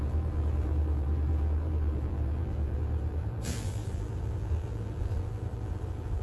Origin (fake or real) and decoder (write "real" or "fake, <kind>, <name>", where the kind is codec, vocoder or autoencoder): fake, vocoder, BigVGAN v2